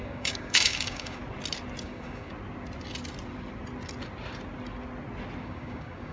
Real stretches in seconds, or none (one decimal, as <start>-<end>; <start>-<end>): 1.2-1.8; 2.3-5.4